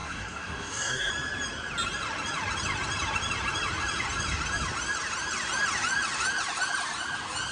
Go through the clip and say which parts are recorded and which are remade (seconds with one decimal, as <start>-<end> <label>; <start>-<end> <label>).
0.0-1.1 remade; 1.1-7.5 recorded